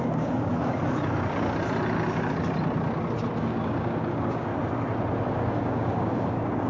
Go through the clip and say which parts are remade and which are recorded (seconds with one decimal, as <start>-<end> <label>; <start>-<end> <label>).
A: 0.0-0.5 remade; 0.5-3.4 recorded; 3.4-4.5 remade; 4.5-5.2 recorded; 5.2-6.7 remade